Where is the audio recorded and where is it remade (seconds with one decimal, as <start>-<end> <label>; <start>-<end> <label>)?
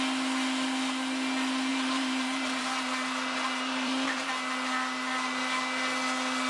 0.0-1.7 recorded; 1.7-4.3 remade; 4.3-6.5 recorded